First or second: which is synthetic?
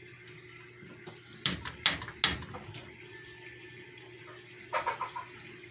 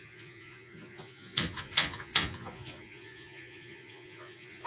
second